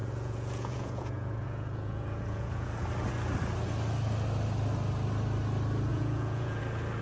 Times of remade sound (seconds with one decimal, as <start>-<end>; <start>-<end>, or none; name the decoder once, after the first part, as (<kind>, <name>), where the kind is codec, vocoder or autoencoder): 0.0-2.7 (vocoder, Vocos); 5.9-6.6